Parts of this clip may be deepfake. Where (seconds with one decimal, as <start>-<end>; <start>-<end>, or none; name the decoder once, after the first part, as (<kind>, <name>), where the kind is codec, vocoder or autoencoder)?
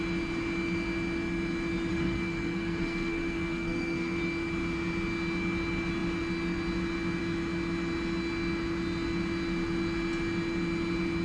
1.9-4.2 (codec, SNAC)